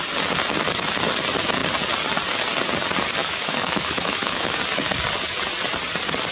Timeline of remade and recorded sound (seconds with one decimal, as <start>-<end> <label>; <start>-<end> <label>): 0.0-3.2 recorded; 3.2-4.6 remade; 4.6-6.3 recorded